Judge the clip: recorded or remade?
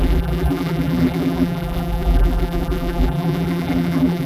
remade